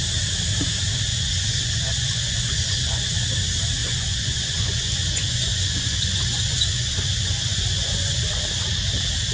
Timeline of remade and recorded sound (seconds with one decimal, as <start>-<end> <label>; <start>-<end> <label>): 0.0-1.1 recorded; 1.1-3.1 remade; 3.1-3.8 recorded; 3.8-8.4 remade; 8.4-9.3 recorded